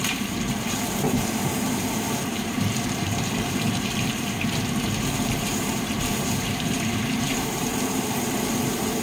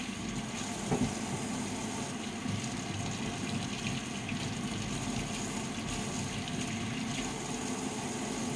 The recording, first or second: second